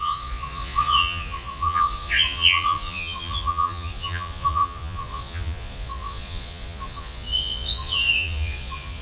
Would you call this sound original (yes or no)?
no